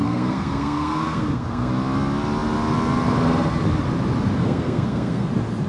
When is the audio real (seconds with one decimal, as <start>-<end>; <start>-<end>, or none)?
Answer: 1.7-4.4; 5.3-5.7